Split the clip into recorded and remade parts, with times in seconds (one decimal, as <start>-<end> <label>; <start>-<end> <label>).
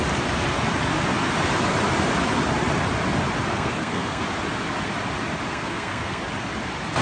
0.0-3.5 recorded; 3.5-4.2 remade; 4.2-5.5 recorded; 5.5-6.2 remade; 6.2-7.0 recorded